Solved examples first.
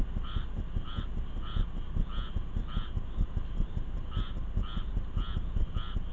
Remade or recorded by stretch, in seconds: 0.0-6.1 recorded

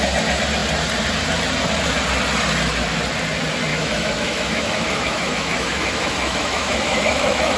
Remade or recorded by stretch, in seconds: 0.0-3.7 recorded; 3.7-7.6 remade

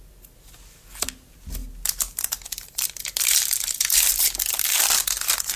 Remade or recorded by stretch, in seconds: 0.0-5.6 recorded

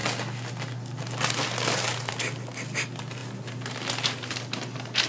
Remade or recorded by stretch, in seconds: 0.0-5.1 recorded

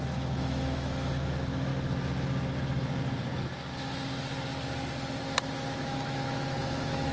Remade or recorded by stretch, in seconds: 0.0-1.7 remade; 1.7-5.8 recorded; 5.8-7.1 remade

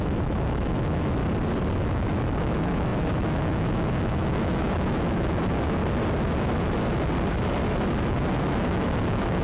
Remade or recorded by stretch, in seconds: 0.0-1.2 remade; 1.2-1.7 recorded; 1.7-5.8 remade; 5.8-8.1 recorded; 8.1-9.4 remade